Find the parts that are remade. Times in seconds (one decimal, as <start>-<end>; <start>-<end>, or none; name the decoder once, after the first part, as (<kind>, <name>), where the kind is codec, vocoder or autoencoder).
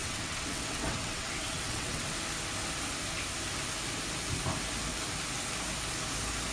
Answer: 0.0-2.0 (vocoder, WaveNeXt)